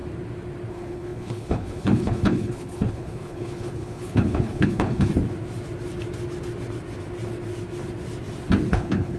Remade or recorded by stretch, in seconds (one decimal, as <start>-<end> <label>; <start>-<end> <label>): 0.0-0.7 recorded; 0.7-5.1 remade; 5.1-8.7 recorded; 8.7-9.2 remade